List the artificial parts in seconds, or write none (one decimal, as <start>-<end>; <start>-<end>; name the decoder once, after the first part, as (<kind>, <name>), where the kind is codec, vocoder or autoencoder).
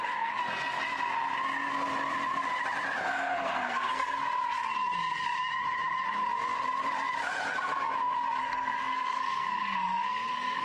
0.0-0.4 (codec, SNAC); 3.0-4.2; 8.4-10.6